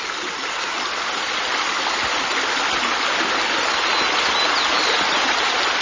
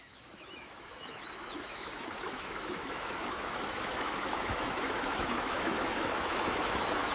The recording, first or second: first